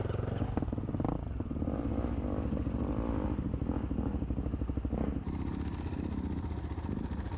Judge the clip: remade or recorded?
recorded